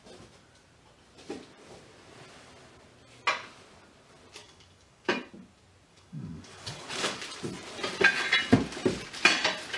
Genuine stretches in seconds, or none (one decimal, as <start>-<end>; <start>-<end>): 0.0-4.4; 5.2-5.9; 7.2-9.8